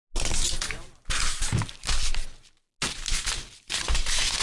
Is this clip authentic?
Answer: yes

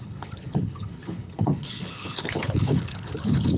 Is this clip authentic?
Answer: no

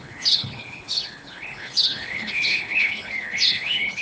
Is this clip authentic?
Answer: no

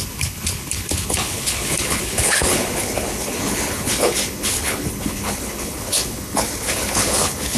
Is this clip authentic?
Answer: no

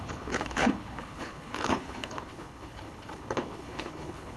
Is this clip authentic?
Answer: no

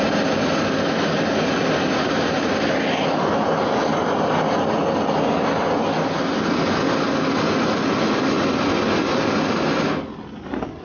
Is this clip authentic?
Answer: yes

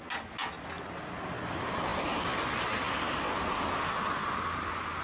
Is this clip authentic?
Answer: yes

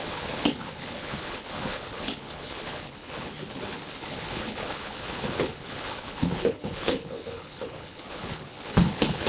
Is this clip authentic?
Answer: no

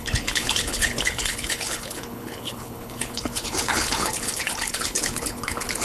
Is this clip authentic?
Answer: no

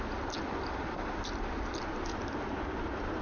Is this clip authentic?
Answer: yes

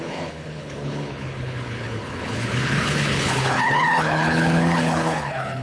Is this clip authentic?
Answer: no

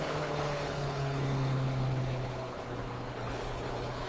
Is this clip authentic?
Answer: no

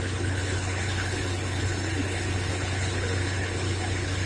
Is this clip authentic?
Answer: no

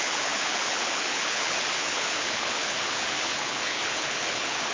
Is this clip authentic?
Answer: no